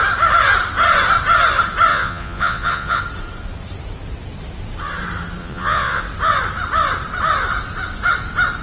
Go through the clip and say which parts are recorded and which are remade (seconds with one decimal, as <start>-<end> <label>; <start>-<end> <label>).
0.0-1.9 recorded; 1.9-3.0 remade; 3.0-5.4 recorded; 5.4-6.0 remade; 6.0-8.6 recorded